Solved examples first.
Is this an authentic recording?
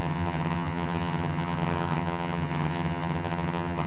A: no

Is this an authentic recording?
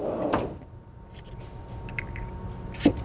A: yes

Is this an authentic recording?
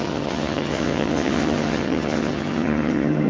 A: no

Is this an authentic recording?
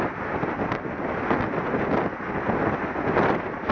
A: yes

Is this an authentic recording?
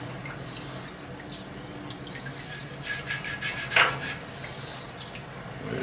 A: yes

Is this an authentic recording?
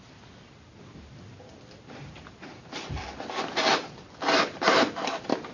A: yes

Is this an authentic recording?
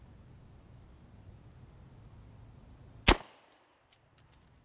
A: yes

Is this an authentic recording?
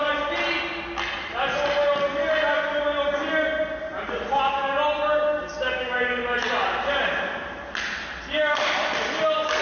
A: yes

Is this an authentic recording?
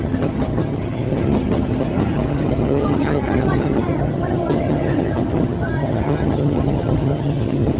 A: no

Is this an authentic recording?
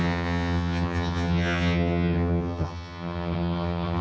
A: no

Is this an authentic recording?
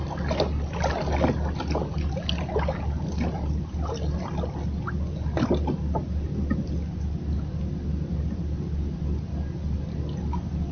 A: yes